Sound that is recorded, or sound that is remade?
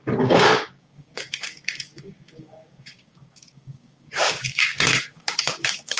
remade